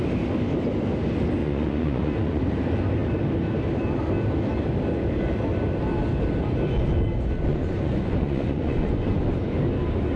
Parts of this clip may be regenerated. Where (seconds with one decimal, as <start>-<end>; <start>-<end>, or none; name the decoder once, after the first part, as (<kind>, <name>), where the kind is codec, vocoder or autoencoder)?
1.4-2.4 (vocoder, Vocos); 7.5-9.2